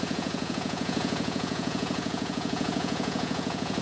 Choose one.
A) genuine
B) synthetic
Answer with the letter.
B